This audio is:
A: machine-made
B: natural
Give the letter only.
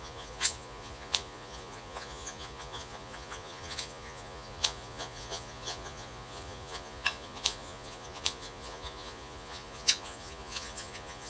A